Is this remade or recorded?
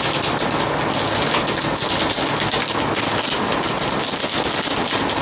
recorded